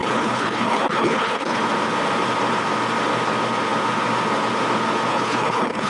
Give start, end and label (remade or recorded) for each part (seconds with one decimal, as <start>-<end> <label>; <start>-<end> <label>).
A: 0.0-1.6 remade; 1.6-5.1 recorded; 5.1-5.9 remade